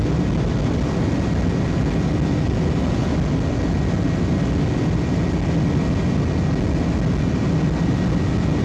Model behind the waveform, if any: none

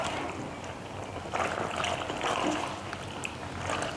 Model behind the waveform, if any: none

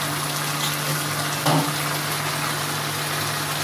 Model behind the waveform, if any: none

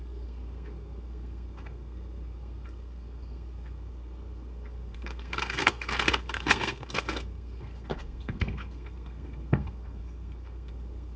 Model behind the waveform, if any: codec, SNAC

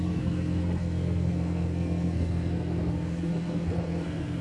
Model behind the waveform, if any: codec, SNAC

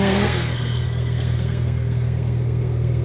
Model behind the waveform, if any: codec, SNAC